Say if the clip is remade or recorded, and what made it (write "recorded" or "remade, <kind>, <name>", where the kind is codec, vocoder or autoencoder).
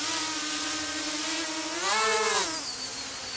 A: recorded